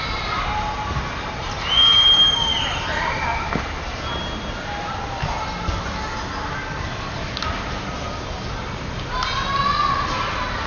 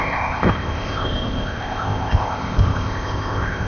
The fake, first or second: second